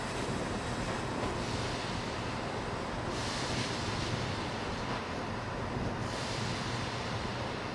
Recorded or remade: remade